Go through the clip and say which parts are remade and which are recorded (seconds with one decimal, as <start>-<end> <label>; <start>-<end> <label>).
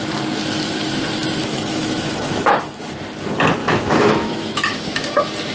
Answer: 0.0-1.4 recorded; 1.4-2.8 remade; 2.8-3.6 recorded; 3.6-5.1 remade; 5.1-5.5 recorded